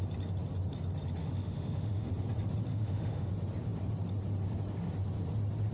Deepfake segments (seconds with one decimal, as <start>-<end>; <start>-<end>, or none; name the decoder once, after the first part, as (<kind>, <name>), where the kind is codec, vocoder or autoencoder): 1.2-2.1 (autoencoder, DAC-VAE); 2.7-3.3